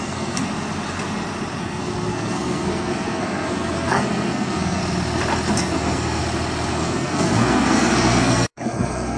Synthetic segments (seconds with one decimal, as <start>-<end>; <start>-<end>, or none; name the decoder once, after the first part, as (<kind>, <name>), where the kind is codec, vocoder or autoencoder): 0.0-0.4 (codec, SNAC); 1.6-4.8; 5.6-6.2; 6.7-9.2